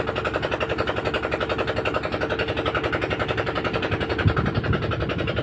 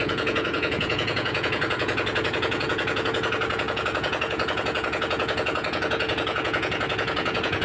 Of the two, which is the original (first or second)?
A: first